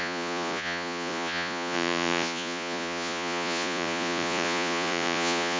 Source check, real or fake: fake